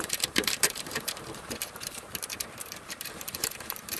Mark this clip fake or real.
fake